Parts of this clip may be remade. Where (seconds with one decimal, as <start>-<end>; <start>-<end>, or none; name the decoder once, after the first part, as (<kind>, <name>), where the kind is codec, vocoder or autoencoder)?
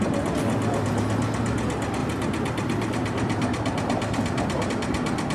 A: 2.0-4.7 (vocoder, BigVGAN v2)